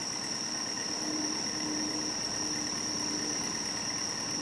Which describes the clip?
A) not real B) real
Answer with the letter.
B